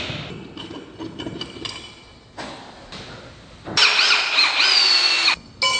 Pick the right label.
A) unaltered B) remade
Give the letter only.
A